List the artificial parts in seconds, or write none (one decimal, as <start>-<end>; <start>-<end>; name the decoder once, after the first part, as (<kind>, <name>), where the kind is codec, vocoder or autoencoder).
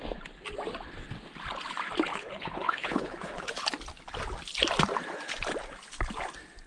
2.1-3.5 (codec, HILCodec)